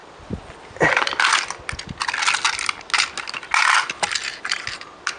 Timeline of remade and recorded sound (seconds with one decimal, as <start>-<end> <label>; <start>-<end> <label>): 0.0-5.2 recorded